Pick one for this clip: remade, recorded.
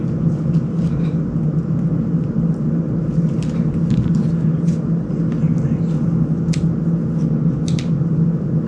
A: recorded